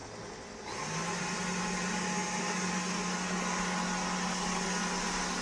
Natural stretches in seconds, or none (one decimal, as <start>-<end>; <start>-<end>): 0.0-5.4